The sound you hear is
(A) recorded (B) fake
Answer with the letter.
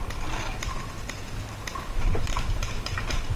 A